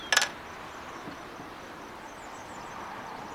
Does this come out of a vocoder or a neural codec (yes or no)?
no